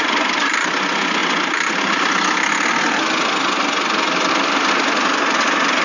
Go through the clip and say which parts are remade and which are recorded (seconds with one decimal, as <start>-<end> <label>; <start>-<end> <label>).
0.0-5.8 recorded